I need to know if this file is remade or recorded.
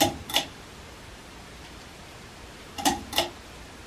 remade